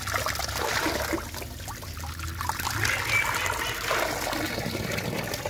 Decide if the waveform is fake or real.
real